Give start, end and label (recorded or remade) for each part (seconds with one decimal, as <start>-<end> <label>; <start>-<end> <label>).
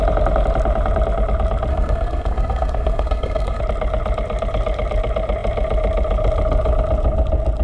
0.0-1.7 recorded; 1.7-3.6 remade; 3.6-7.6 recorded